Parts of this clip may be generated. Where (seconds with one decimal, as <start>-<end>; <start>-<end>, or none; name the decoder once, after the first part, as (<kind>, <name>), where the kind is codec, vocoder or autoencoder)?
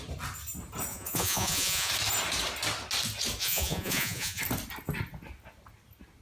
0.9-1.9 (vocoder, Vocos); 3.4-4.4